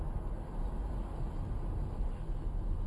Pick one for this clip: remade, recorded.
recorded